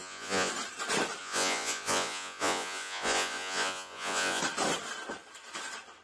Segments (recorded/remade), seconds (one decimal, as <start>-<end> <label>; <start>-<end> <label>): 0.0-0.5 remade; 0.5-1.2 recorded; 1.2-4.4 remade; 4.4-6.0 recorded